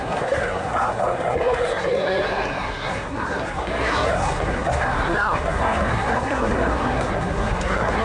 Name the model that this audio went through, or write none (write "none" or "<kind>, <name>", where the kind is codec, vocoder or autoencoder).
codec, SNAC